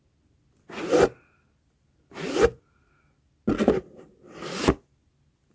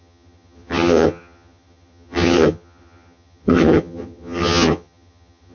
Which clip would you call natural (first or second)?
first